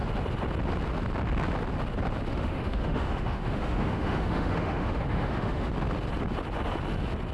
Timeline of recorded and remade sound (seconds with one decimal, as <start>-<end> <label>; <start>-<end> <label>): 0.0-2.3 recorded; 2.3-5.7 remade; 5.7-7.3 recorded